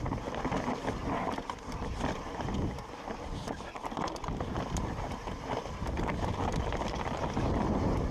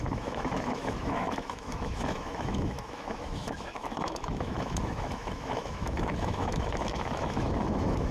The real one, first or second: first